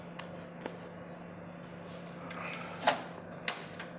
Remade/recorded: recorded